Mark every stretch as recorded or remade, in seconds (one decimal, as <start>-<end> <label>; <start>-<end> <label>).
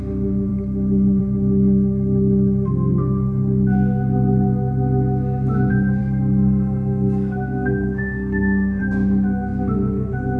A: 0.0-6.0 recorded; 6.0-8.8 remade; 8.8-10.4 recorded